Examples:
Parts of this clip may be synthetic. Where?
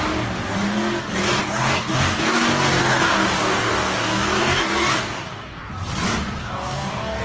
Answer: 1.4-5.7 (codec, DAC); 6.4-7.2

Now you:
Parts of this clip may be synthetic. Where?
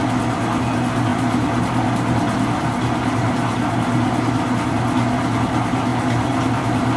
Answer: none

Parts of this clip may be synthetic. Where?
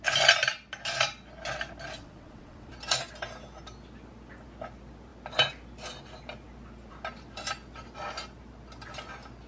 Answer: 2.0-2.7 (vocoder, WaveNeXt)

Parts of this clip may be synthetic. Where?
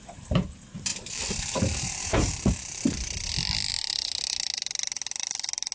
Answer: 0.9-3.2 (vocoder, BigVGAN v2)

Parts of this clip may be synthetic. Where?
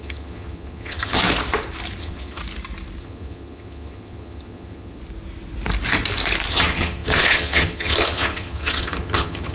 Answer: 0.0-1.2 (vocoder, HiFi-GAN); 2.0-2.4; 3.0-5.0; 6.5-9.5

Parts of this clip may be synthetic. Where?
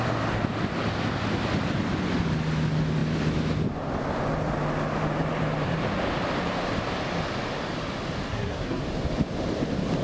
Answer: 8.3-8.8 (codec, SNAC)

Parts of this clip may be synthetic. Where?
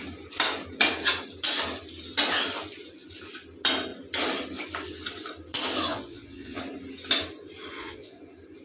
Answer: 5.9-6.6 (vocoder, Vocos); 7.7-8.2